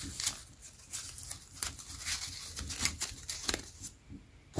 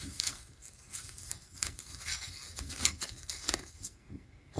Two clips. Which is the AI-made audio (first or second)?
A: second